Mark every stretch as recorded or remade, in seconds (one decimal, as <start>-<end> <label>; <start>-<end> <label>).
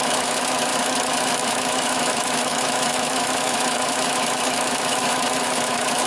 0.0-6.1 remade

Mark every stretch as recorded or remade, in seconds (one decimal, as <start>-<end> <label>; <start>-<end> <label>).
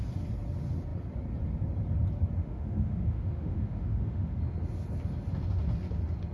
0.0-2.4 recorded; 2.4-4.4 remade; 4.4-6.3 recorded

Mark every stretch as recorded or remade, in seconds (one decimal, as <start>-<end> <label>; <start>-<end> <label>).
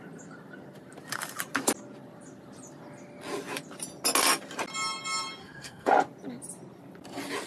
0.0-5.4 recorded; 5.4-5.9 remade; 5.9-7.5 recorded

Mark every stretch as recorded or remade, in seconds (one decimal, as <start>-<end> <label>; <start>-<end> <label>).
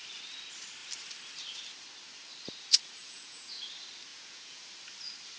0.0-3.0 recorded; 3.0-3.6 remade; 3.6-4.1 recorded; 4.1-4.7 remade; 4.7-5.4 recorded